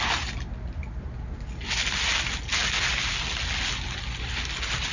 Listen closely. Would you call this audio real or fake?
real